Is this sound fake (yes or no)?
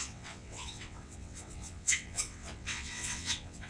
yes